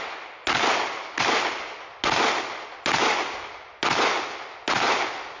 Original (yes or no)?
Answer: yes